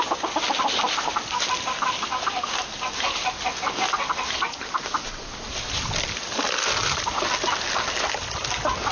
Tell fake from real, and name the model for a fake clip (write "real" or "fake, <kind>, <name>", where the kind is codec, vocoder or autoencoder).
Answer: real